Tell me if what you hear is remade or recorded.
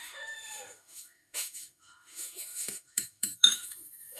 remade